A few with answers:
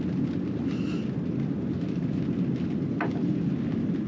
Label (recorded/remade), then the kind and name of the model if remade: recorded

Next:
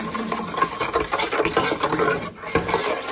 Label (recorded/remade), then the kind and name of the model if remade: recorded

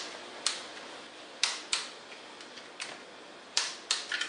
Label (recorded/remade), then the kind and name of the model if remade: recorded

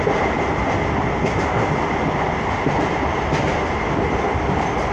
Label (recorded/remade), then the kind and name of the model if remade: recorded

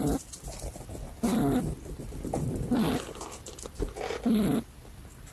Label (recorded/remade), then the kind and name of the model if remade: recorded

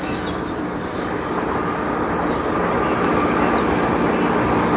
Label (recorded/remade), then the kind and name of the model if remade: recorded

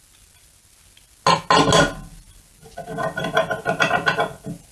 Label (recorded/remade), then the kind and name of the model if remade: recorded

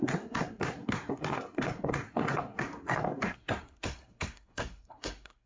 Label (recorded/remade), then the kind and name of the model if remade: remade, codec, SNAC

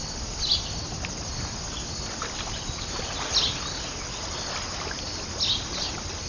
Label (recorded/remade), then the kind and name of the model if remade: recorded